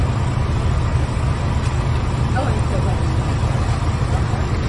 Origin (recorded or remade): recorded